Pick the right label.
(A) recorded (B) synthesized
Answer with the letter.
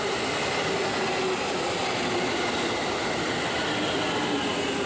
A